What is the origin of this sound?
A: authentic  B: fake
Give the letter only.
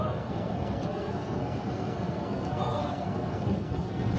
B